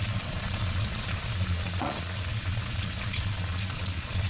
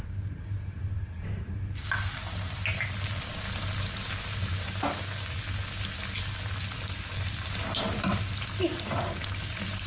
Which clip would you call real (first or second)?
second